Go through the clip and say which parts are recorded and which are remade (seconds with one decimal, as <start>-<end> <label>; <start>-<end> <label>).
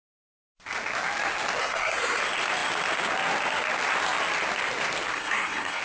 0.0-1.6 recorded; 1.6-2.2 remade; 2.2-5.1 recorded; 5.1-5.8 remade